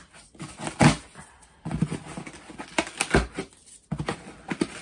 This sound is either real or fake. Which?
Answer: real